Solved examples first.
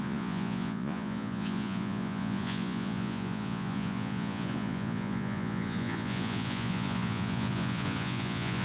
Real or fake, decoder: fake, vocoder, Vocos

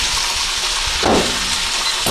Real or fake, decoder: real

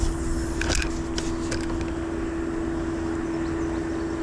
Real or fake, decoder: real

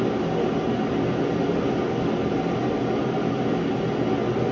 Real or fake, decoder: real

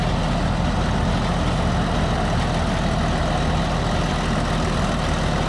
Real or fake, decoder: real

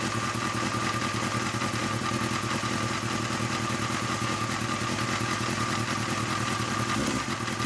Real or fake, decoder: real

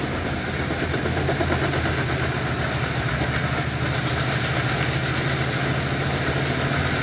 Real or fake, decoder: real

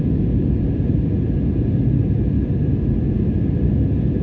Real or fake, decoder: real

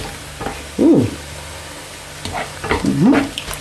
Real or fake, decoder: real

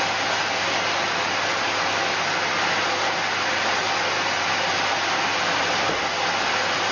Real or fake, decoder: real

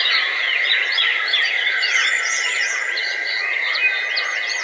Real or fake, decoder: real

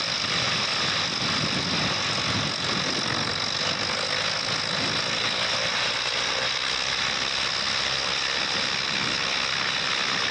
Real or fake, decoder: real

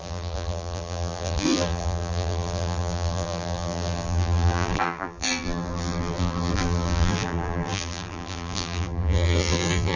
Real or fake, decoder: fake, vocoder, BigVGAN v2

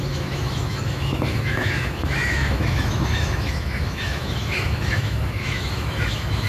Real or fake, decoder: fake, autoencoder, DAC-VAE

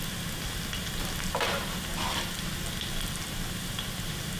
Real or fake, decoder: real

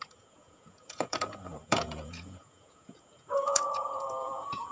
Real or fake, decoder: fake, vocoder, Vocos